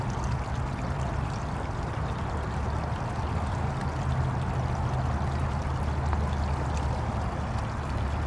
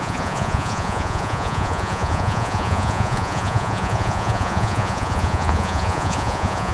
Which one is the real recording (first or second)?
first